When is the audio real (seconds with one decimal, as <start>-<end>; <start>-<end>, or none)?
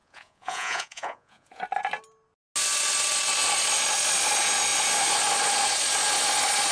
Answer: 1.6-6.7